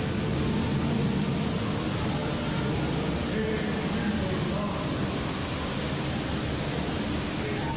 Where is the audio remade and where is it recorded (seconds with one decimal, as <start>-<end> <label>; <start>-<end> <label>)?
0.0-7.8 recorded